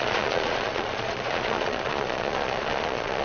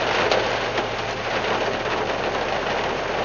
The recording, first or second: second